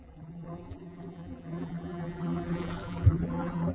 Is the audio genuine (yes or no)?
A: no